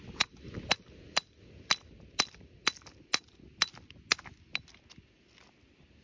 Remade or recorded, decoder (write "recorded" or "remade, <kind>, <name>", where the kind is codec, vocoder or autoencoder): recorded